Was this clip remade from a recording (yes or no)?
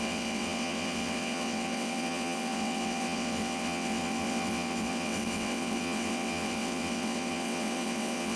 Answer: yes